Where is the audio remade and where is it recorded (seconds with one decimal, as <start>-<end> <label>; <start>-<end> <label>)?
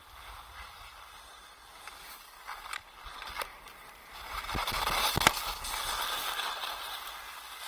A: 0.0-7.7 recorded